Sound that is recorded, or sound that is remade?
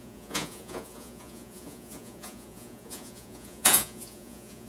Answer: remade